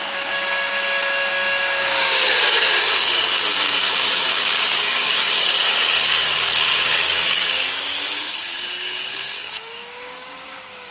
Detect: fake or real fake